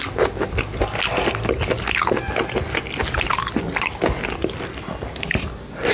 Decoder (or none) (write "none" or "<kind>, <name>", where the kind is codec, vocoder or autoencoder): none